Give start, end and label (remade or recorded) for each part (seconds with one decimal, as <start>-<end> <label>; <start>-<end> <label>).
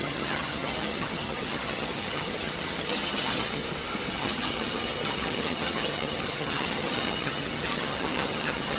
0.0-3.6 remade; 3.6-4.1 recorded; 4.1-8.8 remade